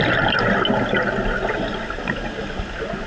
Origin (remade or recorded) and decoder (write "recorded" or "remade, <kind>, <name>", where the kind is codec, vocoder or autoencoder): recorded